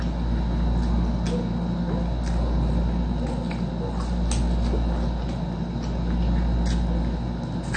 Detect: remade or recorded recorded